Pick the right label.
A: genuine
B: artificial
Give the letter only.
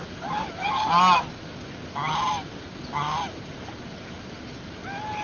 A